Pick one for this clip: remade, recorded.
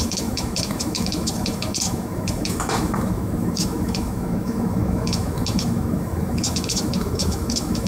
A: remade